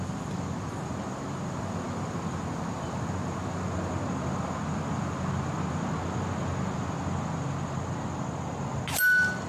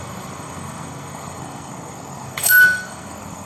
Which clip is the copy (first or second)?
second